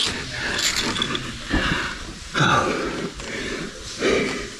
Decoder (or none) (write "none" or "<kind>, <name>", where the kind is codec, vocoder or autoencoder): none